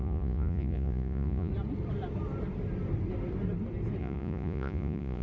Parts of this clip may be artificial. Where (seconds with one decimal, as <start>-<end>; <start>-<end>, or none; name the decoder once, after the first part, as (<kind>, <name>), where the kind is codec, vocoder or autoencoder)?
0.0-1.5 (vocoder, Vocos); 4.0-5.2